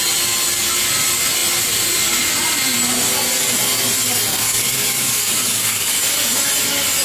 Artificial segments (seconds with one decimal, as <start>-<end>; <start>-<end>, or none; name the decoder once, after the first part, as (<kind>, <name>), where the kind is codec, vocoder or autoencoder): 4.3-6.0 (codec, DAC)

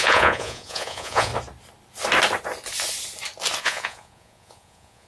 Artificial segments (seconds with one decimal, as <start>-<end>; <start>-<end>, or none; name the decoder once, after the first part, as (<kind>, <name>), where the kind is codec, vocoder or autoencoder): 0.0-1.3 (vocoder, Vocos); 3.6-5.1

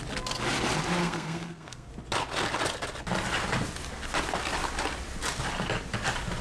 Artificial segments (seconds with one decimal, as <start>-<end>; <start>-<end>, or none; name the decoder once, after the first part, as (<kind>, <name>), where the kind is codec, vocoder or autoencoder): 1.0-1.9 (codec, SNAC)

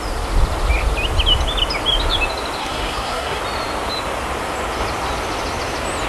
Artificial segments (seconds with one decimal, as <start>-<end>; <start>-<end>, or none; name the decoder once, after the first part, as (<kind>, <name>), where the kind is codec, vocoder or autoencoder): 2.6-3.4 (codec, SNAC)